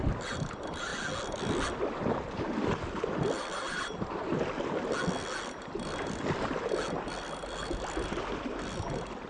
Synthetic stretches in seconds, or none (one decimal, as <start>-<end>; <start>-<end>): 0.0-0.9; 2.1-4.3; 7.6-9.3